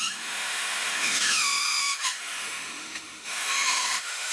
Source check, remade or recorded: remade